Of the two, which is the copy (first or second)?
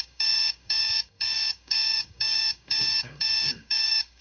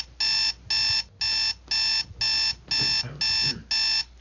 first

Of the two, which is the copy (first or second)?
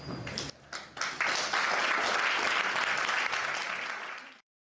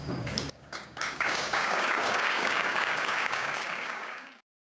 second